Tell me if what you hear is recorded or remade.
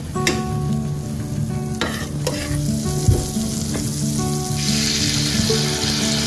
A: recorded